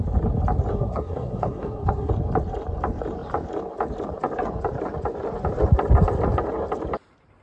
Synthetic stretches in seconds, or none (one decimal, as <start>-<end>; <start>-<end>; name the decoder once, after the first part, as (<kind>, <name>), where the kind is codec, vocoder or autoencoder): 0.7-2.1 (codec, SNAC)